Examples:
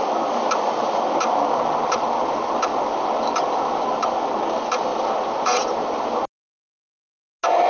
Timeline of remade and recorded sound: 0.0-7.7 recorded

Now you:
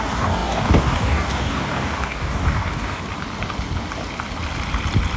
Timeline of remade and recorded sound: 0.0-3.0 remade; 3.0-5.2 recorded

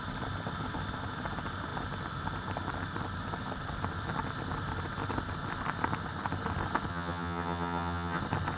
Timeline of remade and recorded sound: 0.0-6.9 recorded; 6.9-8.2 remade; 8.2-8.6 recorded

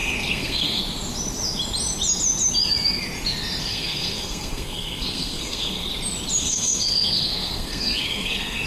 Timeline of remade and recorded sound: 0.0-0.8 remade; 0.8-3.7 recorded; 3.7-5.9 remade; 5.9-6.4 recorded; 6.4-8.7 remade

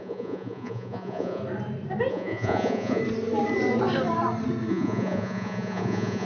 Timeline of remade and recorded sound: 0.0-1.4 remade; 1.4-2.1 recorded; 2.1-3.0 remade; 3.0-4.7 recorded; 4.7-6.2 remade

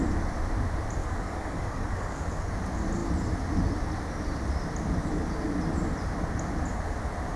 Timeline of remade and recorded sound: 0.0-1.0 recorded; 1.0-2.5 remade; 2.5-7.4 recorded